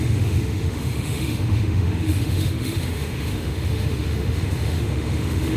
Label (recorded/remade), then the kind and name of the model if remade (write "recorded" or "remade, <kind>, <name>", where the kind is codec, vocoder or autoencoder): remade, autoencoder, DAC-VAE